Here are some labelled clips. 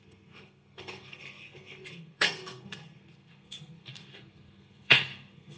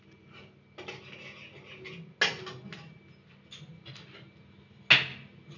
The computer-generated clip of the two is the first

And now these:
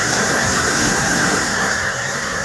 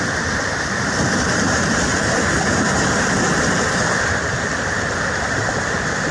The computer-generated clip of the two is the first